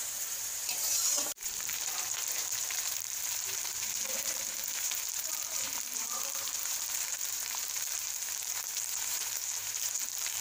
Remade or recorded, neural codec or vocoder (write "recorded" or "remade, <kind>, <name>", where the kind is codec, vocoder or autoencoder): remade, vocoder, BigVGAN v2